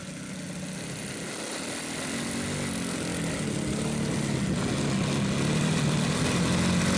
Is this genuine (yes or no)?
yes